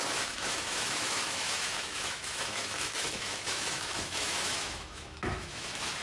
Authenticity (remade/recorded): remade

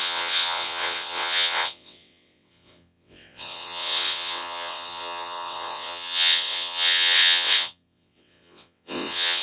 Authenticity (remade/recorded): remade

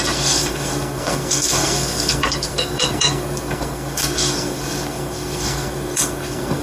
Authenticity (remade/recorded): remade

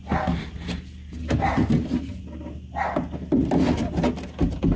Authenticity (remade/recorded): recorded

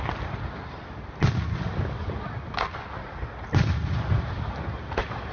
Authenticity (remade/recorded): recorded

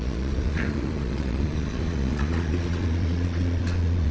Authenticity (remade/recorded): remade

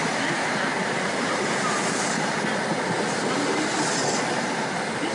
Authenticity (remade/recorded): recorded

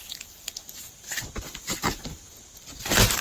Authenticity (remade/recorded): remade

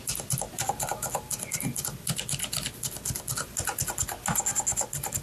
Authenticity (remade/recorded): recorded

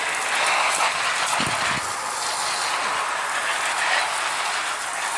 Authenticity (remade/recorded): recorded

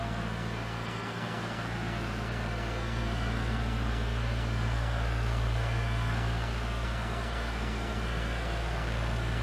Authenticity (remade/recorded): remade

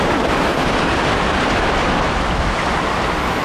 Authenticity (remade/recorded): recorded